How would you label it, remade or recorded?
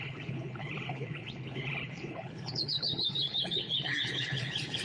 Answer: remade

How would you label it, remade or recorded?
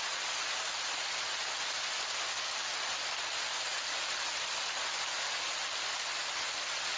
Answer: recorded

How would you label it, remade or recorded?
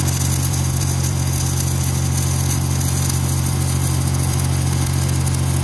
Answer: recorded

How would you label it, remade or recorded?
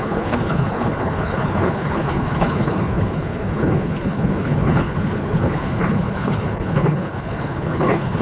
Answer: remade